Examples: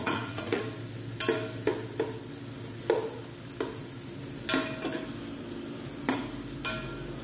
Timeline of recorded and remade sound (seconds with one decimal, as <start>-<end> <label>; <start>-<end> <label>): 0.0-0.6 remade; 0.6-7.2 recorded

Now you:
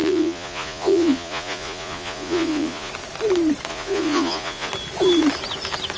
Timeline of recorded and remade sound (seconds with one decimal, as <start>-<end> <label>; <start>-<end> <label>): 0.0-2.9 remade; 2.9-3.7 recorded; 3.7-4.7 remade; 4.7-6.0 recorded

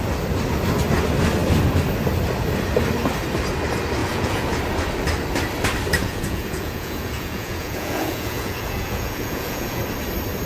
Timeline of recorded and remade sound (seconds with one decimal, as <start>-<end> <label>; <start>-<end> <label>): 0.0-4.0 recorded; 4.0-4.6 remade; 4.6-6.0 recorded; 6.0-9.8 remade; 9.8-10.5 recorded

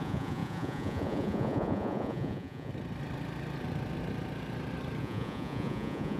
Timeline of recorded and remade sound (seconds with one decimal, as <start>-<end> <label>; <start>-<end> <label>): 0.0-2.7 remade; 2.7-5.0 recorded; 5.0-6.2 remade

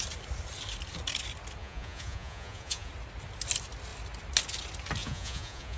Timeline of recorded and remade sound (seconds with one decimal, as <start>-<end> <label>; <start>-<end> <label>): 0.0-1.6 recorded; 1.6-2.9 remade; 2.9-5.0 recorded; 5.0-5.8 remade

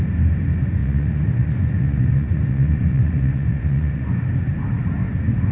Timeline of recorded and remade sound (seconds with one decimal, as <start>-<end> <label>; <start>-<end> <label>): 0.0-0.8 recorded; 0.8-4.1 remade; 4.1-5.5 recorded

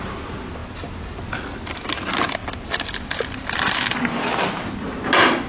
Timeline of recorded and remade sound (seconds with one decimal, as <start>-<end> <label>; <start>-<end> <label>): 0.0-5.5 recorded